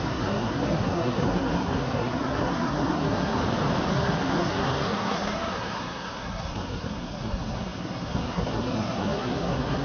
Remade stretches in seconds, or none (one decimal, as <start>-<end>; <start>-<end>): 0.0-3.4; 3.9-9.8